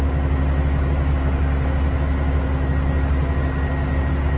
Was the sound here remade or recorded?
recorded